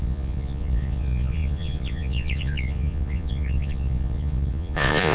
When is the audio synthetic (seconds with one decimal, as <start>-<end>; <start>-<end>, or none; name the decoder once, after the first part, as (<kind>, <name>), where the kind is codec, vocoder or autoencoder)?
0.0-5.1 (vocoder, Vocos)